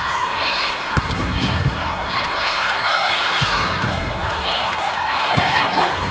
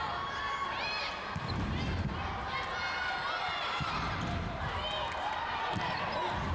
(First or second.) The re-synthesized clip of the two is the first